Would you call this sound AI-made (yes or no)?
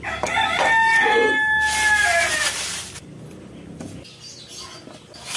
no